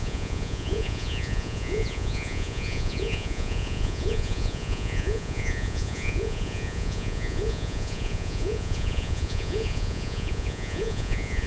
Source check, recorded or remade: remade